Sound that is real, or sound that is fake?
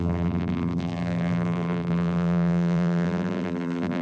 fake